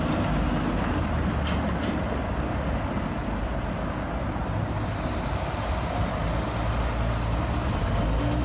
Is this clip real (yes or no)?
yes